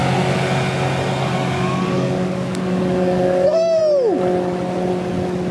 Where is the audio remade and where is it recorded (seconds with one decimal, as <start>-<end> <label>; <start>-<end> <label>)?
0.0-1.2 recorded; 1.2-3.8 remade; 3.8-5.5 recorded